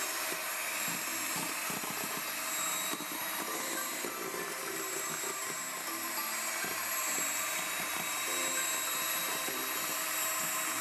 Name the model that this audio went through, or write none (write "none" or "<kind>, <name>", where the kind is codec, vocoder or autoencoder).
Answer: vocoder, BigVGAN v2